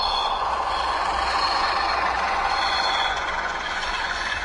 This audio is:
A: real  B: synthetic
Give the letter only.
B